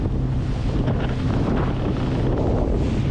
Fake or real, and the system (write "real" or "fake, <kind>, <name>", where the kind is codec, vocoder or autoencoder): real